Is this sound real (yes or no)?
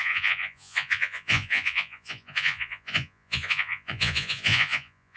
no